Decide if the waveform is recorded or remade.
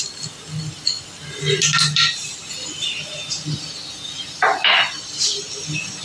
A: recorded